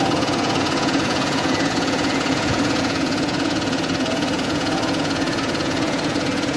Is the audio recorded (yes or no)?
no